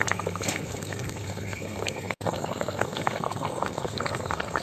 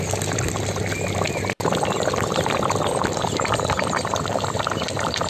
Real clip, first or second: second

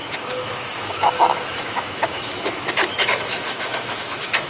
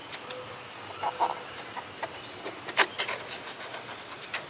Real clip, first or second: second